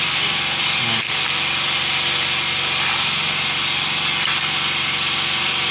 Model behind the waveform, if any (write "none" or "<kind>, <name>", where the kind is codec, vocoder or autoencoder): none